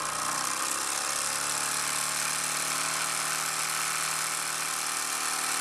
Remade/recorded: recorded